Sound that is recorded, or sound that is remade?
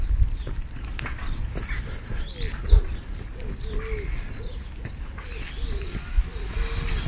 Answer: recorded